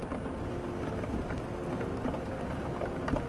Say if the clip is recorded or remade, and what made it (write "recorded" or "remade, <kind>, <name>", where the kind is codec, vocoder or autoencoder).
recorded